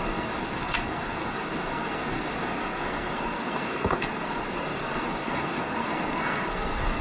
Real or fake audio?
fake